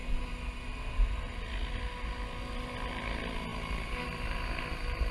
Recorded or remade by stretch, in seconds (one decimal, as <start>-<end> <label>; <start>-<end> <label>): 0.0-5.1 recorded